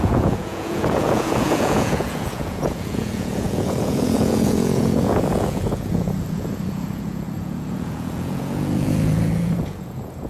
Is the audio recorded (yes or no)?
no